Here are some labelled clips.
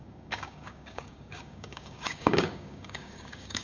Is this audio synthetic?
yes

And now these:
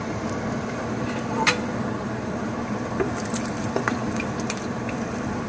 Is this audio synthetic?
yes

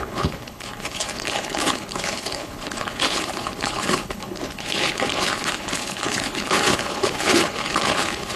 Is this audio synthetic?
yes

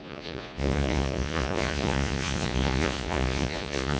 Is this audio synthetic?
yes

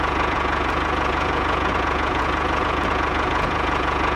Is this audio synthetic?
yes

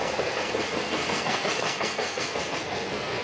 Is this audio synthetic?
yes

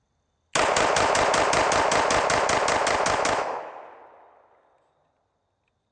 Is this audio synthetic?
no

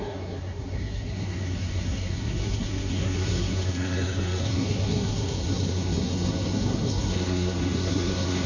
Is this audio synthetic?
yes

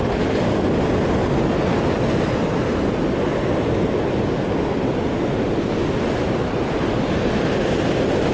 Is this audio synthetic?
no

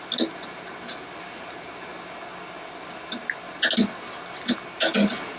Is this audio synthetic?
no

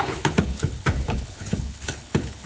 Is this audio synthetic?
yes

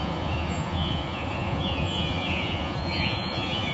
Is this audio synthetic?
yes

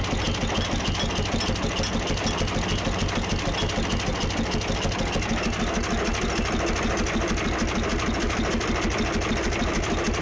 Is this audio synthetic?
no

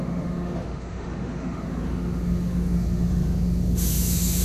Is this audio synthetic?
yes